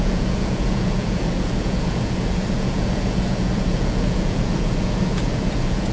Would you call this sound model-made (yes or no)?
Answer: yes